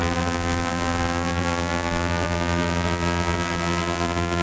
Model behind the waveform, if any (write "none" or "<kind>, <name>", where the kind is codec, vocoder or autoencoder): vocoder, BigVGAN v2